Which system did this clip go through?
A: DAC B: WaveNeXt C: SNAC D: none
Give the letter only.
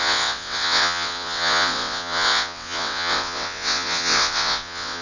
B